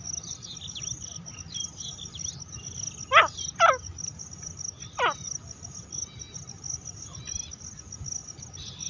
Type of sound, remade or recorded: recorded